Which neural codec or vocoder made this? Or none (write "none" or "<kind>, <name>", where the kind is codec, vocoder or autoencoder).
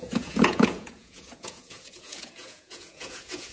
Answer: vocoder, Vocos